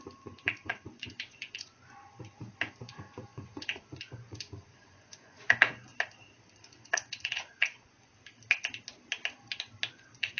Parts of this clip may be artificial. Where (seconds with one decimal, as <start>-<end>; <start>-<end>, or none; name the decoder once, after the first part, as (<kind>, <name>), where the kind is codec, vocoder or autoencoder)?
0.0-2.1 (vocoder, Vocos); 2.8-5.9; 6.6-8.1; 9.9-10.4

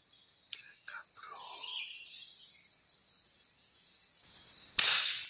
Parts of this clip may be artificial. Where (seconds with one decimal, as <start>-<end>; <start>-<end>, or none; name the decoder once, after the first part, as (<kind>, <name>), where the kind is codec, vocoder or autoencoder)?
none

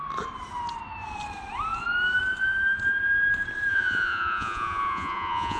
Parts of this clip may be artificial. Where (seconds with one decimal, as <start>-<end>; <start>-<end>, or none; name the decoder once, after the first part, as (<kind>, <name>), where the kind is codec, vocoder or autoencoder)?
3.7-5.6 (vocoder, Vocos)